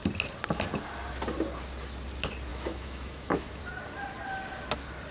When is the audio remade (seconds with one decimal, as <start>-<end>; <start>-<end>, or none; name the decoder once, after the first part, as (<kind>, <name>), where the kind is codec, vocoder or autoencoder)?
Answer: 2.5-3.6 (autoencoder, DAC-VAE)